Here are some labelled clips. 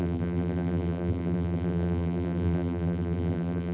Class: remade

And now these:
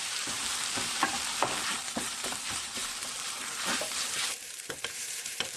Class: remade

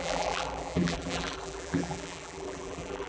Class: remade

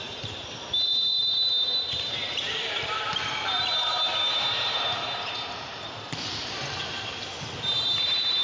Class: remade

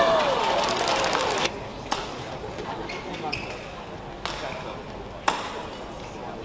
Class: recorded